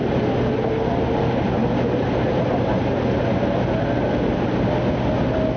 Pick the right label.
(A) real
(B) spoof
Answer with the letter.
A